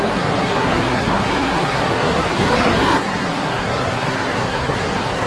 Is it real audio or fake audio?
fake